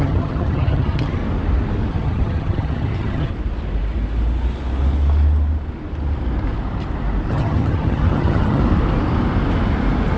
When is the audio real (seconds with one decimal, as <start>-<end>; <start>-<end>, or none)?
1.2-1.9; 3.3-7.3; 8.6-10.2